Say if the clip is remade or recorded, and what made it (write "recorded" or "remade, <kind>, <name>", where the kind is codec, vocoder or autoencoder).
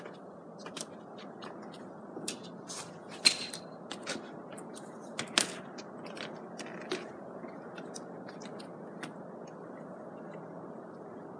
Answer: remade, vocoder, BigVGAN v2